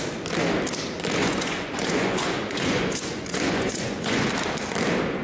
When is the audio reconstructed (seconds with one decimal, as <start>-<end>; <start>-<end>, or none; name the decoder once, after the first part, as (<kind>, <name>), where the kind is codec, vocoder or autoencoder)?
1.2-4.3 (vocoder, Vocos)